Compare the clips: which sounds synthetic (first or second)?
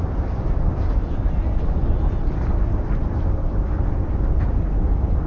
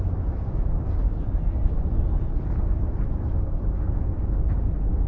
first